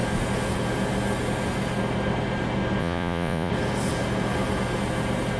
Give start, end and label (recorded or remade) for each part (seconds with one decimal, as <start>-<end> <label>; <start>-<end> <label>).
0.0-2.8 recorded; 2.8-3.5 remade; 3.5-5.4 recorded